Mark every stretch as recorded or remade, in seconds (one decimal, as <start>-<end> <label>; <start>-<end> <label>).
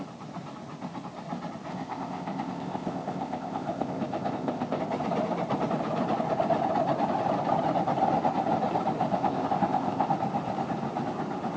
0.0-1.7 recorded; 1.7-4.8 remade; 4.8-9.1 recorded; 9.1-10.1 remade; 10.1-11.6 recorded